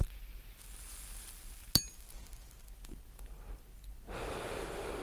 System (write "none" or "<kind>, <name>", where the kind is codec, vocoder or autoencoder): none